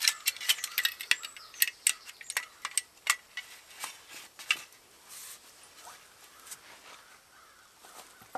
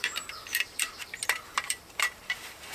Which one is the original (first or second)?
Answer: first